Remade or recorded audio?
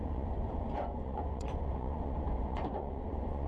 remade